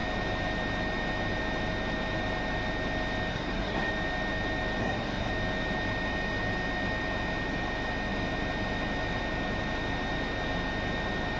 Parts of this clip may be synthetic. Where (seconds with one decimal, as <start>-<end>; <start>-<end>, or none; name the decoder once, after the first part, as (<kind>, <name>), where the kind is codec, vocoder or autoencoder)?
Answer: 3.3-3.9 (codec, SNAC); 4.8-5.3